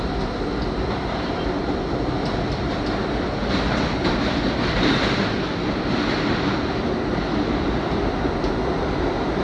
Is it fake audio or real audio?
real